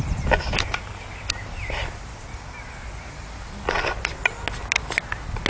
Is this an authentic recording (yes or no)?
yes